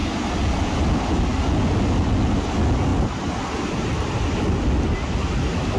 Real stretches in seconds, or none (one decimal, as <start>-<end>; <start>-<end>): 0.0-5.8